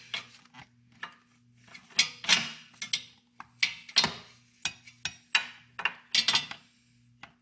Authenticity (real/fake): real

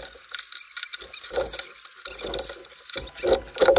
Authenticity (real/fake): real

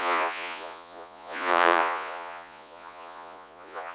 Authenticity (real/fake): fake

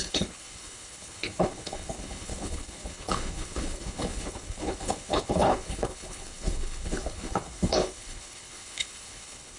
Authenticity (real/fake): fake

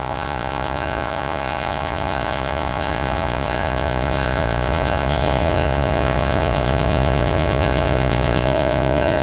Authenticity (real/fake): fake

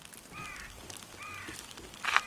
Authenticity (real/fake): real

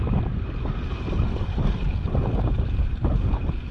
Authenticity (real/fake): real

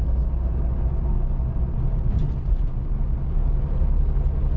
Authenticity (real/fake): real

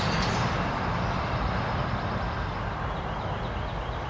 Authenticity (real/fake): real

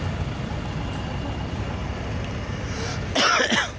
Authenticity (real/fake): real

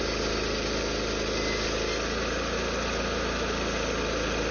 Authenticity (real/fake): real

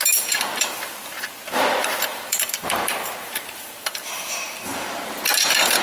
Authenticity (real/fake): fake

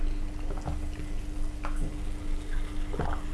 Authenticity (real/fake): real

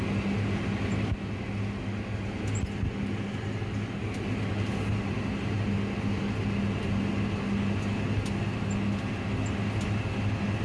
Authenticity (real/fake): real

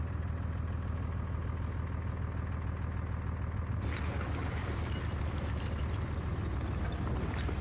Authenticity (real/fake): real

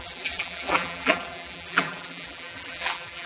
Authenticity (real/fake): fake